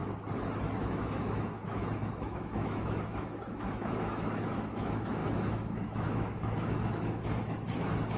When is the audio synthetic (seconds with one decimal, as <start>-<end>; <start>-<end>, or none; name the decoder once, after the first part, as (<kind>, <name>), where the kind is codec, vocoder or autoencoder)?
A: 0.8-8.2 (autoencoder, DAC-VAE)

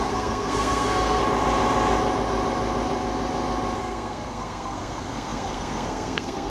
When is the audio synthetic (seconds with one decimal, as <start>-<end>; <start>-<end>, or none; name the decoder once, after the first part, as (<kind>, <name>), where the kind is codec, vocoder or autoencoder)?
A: 0.0-1.2 (codec, SNAC); 3.8-6.5